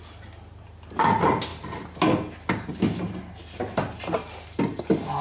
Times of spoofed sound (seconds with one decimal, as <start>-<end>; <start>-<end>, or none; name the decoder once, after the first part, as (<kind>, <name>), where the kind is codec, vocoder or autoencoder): none